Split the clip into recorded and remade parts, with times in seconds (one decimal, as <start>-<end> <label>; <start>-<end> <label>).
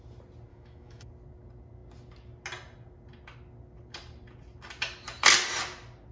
0.0-0.5 recorded; 0.5-1.1 remade; 1.1-6.1 recorded